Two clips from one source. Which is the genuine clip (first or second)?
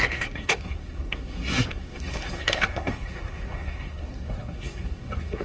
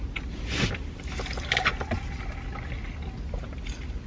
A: second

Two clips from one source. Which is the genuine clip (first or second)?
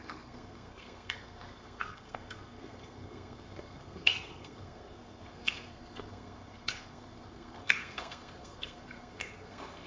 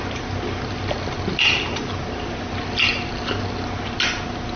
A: second